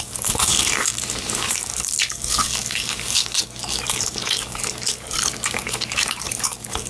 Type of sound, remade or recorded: remade